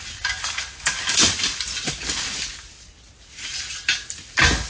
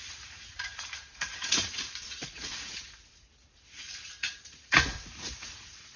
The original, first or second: first